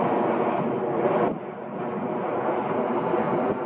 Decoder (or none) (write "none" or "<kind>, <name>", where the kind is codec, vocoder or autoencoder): none